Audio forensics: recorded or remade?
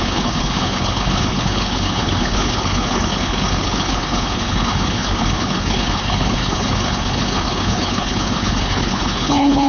remade